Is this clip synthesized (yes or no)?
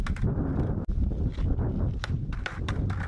no